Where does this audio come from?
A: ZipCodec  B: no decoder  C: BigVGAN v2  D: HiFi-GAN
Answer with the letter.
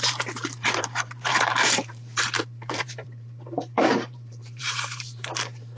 C